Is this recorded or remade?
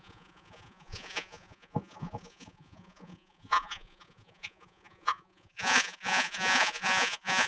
remade